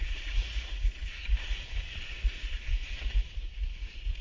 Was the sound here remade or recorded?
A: remade